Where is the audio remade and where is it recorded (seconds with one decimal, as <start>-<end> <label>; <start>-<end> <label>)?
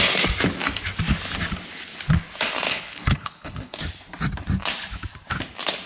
0.0-2.7 recorded; 2.7-3.8 remade; 3.8-5.9 recorded